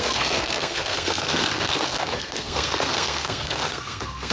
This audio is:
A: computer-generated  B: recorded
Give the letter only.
A